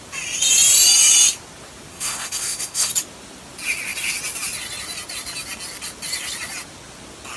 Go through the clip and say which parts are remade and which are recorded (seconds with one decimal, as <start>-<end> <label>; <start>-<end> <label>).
0.0-1.9 recorded; 1.9-2.9 remade; 2.9-7.4 recorded

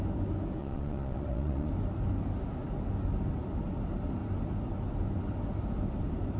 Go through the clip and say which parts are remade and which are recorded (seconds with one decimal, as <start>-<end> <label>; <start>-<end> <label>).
0.0-0.6 recorded; 0.6-1.7 remade; 1.7-6.4 recorded

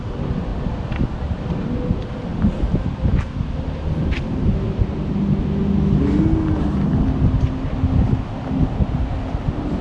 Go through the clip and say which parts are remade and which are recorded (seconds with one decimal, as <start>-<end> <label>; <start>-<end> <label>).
0.0-0.5 recorded; 0.5-1.7 remade; 1.7-9.8 recorded

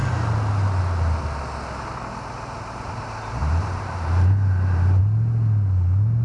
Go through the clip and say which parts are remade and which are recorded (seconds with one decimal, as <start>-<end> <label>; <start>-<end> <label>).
0.0-3.4 recorded; 3.4-5.0 remade; 5.0-6.2 recorded

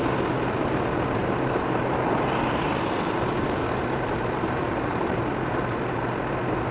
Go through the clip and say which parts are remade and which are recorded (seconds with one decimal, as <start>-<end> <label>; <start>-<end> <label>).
0.0-1.2 recorded; 1.2-5.2 remade; 5.2-6.7 recorded

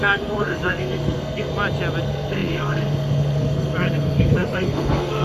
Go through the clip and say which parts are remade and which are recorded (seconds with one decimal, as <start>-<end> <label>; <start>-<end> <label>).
0.0-1.5 remade; 1.5-2.0 recorded; 2.0-5.2 remade

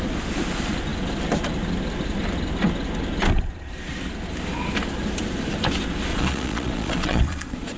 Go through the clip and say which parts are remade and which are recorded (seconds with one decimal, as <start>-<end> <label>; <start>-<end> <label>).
0.0-6.1 recorded; 6.1-7.8 remade